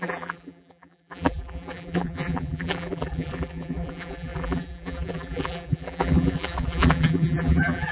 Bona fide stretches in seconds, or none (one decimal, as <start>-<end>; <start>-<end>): none